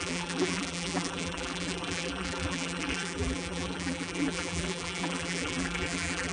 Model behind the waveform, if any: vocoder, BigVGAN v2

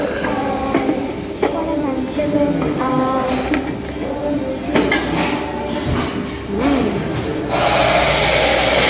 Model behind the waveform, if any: none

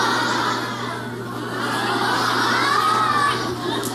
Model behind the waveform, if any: none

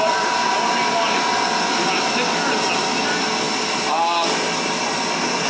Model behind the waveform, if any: none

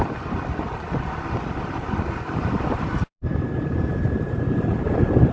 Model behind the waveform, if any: vocoder, BigVGAN v2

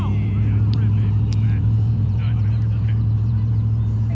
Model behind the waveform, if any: vocoder, BigVGAN v2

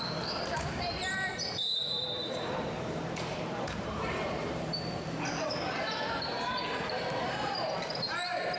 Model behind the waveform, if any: vocoder, BigVGAN v2